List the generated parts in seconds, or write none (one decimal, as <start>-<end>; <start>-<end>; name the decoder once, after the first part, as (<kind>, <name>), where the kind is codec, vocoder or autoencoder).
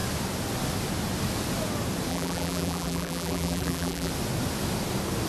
2.1-4.1 (vocoder, BigVGAN v2)